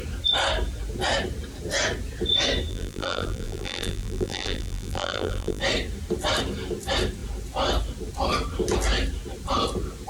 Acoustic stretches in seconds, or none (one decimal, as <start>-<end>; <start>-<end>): 0.0-2.7; 5.6-10.1